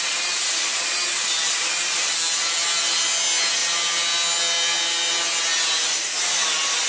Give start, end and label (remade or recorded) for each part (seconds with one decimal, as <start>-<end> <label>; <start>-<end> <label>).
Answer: 0.0-6.9 recorded